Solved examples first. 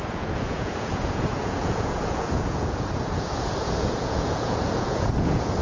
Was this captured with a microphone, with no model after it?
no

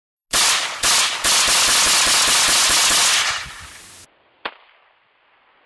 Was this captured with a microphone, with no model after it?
yes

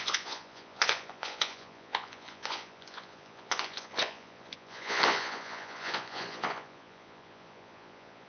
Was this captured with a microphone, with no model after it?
no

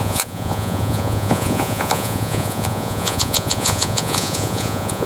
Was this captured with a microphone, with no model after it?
no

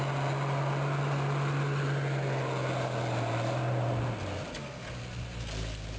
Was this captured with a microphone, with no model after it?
yes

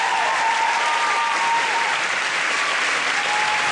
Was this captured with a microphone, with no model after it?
yes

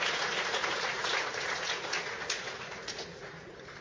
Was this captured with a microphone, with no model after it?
no